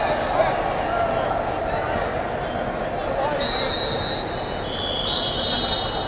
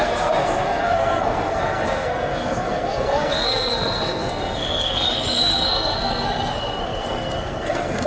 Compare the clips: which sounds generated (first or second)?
second